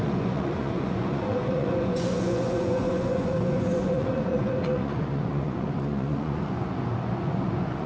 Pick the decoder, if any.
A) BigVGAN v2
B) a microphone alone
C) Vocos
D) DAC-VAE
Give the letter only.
C